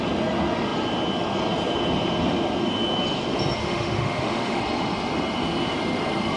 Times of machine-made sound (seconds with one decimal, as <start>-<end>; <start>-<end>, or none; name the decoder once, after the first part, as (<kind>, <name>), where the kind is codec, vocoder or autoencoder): 3.6-4.6 (autoencoder, DAC-VAE)